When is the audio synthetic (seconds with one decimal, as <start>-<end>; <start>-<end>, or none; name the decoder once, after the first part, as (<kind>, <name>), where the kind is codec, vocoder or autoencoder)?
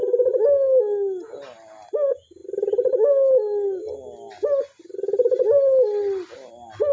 none